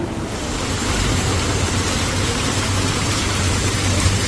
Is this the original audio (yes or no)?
no